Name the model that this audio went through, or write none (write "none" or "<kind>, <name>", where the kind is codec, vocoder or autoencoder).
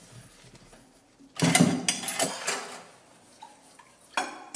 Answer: none